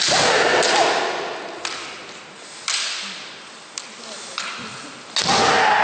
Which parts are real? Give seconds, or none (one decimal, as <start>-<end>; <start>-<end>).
0.0-5.8